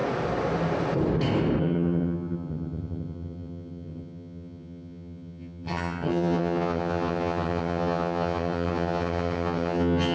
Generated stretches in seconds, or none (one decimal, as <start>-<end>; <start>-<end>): 1.6-10.1